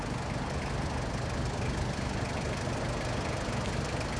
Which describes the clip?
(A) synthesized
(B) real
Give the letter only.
B